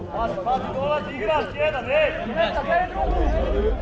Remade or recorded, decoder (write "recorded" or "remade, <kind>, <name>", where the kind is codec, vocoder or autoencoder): recorded